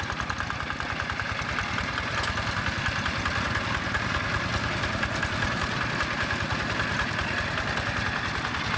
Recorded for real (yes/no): yes